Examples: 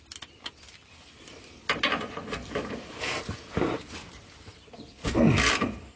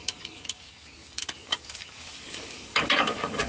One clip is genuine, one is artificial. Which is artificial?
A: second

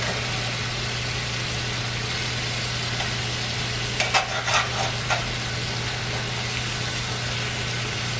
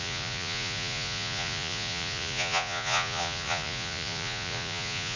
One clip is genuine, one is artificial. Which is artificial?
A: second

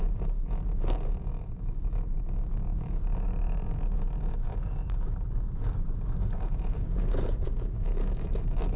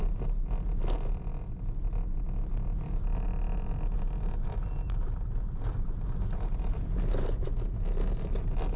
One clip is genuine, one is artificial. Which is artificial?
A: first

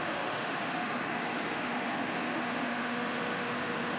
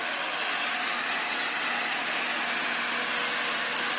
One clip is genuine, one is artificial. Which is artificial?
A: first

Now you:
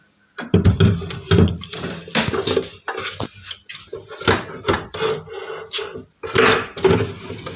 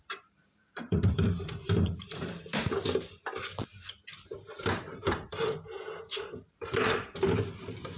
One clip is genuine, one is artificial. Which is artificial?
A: second